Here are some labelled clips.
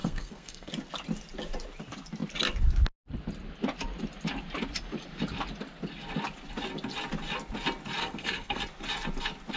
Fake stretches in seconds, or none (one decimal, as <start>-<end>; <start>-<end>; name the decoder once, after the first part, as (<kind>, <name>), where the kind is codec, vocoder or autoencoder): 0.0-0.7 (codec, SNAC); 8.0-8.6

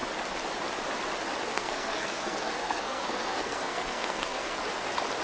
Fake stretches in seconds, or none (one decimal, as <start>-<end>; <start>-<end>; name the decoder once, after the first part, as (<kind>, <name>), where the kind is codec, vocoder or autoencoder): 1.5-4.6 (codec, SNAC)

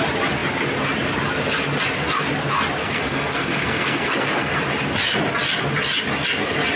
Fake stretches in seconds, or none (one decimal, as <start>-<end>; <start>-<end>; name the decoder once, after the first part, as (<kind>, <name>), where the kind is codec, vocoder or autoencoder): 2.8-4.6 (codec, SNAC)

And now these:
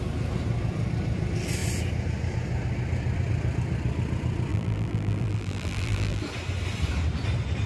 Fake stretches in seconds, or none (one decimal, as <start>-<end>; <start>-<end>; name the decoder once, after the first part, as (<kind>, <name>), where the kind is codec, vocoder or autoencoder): 4.5-6.2 (vocoder, BigVGAN v2)